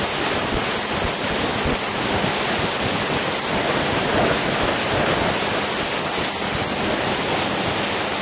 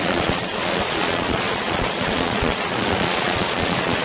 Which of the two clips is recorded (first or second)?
first